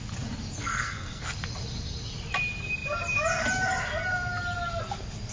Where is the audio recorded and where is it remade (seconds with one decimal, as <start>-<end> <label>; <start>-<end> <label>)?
0.0-0.6 recorded; 0.6-1.3 remade; 1.3-5.3 recorded